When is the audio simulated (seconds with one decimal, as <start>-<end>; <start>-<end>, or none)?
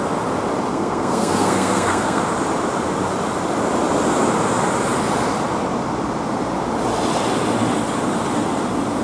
0.7-2.2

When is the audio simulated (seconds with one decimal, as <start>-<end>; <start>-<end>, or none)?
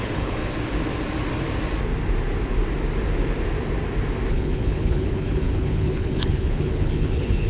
0.0-0.4; 4.3-7.5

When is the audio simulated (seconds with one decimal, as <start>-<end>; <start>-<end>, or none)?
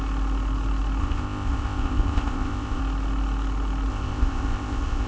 1.0-2.8; 3.9-5.1